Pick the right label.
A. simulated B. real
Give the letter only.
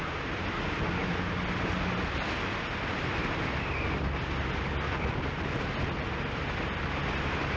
B